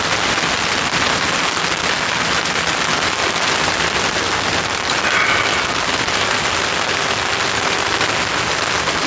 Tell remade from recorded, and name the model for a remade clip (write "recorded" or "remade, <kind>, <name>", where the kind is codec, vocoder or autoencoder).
recorded